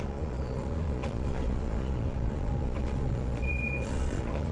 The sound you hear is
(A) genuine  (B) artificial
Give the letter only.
B